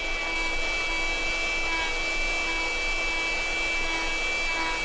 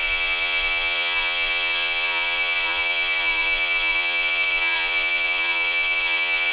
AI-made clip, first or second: second